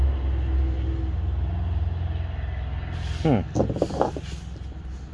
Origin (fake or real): real